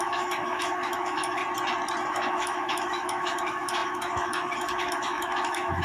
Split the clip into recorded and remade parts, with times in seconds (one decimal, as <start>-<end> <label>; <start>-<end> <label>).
0.0-1.4 remade; 1.4-2.1 recorded; 2.1-5.8 remade